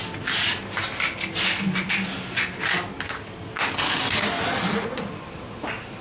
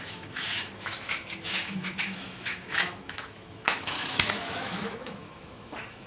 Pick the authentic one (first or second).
first